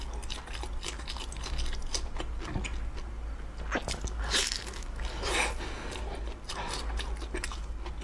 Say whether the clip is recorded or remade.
recorded